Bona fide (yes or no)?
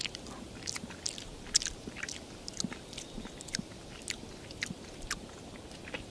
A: yes